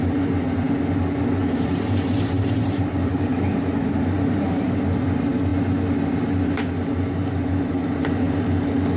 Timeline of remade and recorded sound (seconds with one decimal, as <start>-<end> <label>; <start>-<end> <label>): 0.0-1.4 recorded; 1.4-4.8 remade; 4.8-9.0 recorded